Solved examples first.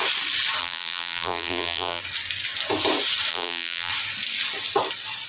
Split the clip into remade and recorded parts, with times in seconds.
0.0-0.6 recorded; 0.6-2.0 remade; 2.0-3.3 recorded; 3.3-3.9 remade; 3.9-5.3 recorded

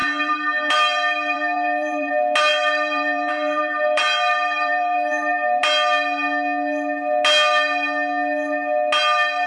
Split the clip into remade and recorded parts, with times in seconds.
0.0-2.1 remade; 2.1-2.5 recorded; 2.5-5.6 remade; 5.6-9.5 recorded

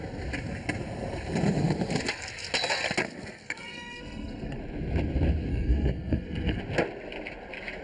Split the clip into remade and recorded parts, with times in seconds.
0.0-3.4 recorded; 3.4-4.6 remade; 4.6-5.5 recorded; 5.5-6.6 remade; 6.6-7.8 recorded

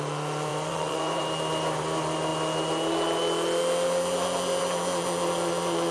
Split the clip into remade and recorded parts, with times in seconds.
0.0-0.5 recorded; 0.5-1.2 remade; 1.2-5.9 recorded

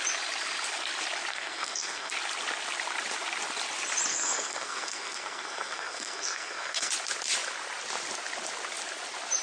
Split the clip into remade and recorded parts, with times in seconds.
0.0-1.3 recorded; 1.3-2.1 remade; 2.1-4.1 recorded; 4.1-6.9 remade; 6.9-9.4 recorded

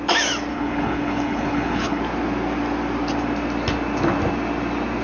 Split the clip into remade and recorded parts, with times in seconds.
0.0-0.5 recorded; 0.5-2.0 remade; 2.0-5.0 recorded

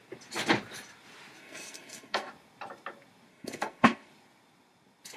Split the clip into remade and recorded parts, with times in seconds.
0.0-1.4 recorded; 1.4-2.3 remade; 2.3-3.3 recorded; 3.3-4.1 remade; 4.1-5.2 recorded